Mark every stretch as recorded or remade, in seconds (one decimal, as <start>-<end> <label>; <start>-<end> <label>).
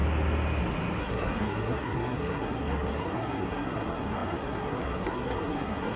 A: 0.0-1.0 recorded; 1.0-6.0 remade